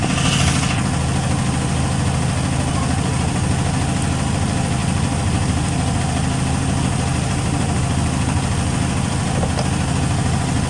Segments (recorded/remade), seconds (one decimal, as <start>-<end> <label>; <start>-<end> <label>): 0.0-4.8 recorded; 4.8-6.0 remade; 6.0-7.1 recorded; 7.1-7.8 remade; 7.8-10.7 recorded